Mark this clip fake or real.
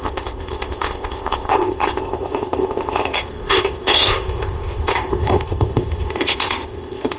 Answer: fake